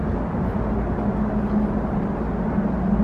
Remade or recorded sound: recorded